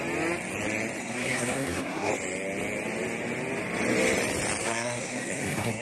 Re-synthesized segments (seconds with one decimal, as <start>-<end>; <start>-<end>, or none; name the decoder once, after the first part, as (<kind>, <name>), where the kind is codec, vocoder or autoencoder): 1.0-2.1 (codec, SNAC); 4.6-5.8